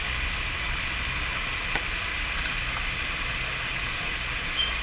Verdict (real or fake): real